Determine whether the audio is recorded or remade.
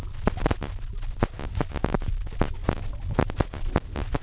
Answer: recorded